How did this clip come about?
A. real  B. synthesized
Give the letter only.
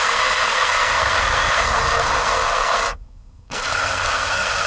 B